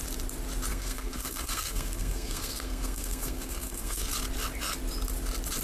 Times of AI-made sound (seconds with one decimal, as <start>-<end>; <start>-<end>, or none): 0.7-4.1